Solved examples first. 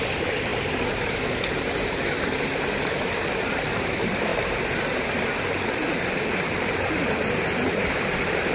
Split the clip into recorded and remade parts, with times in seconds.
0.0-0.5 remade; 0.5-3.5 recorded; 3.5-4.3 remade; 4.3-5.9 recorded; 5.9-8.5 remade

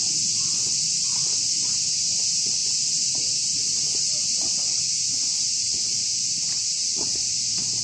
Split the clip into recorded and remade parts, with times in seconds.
0.0-2.6 recorded; 2.6-7.2 remade; 7.2-7.8 recorded

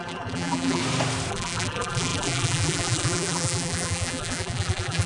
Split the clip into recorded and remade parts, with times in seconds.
0.0-0.8 remade; 0.8-1.3 recorded; 1.3-5.1 remade